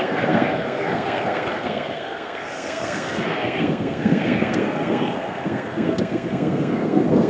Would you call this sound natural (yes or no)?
no